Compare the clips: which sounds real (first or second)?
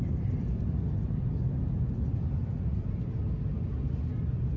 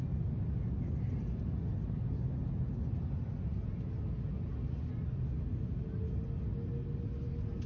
second